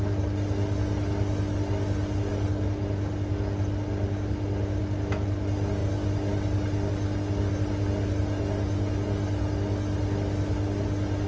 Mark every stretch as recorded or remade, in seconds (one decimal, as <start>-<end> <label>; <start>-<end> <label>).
0.0-11.3 recorded